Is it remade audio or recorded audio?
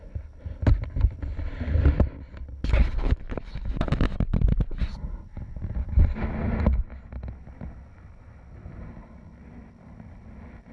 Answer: recorded